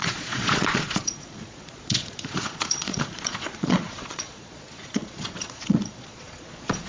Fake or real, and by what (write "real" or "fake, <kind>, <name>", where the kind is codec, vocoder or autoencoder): fake, vocoder, Vocos